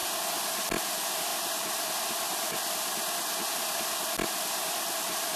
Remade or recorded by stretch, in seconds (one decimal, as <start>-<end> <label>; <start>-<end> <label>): 0.0-5.4 recorded